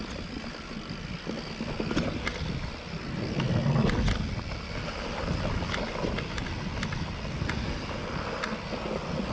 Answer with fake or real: real